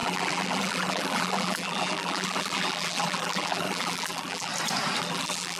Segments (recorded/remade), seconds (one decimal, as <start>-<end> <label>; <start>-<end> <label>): 0.0-4.5 remade; 4.5-5.0 recorded; 5.0-5.6 remade